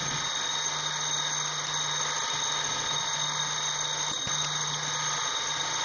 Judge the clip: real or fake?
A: real